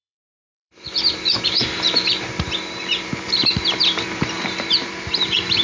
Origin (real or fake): fake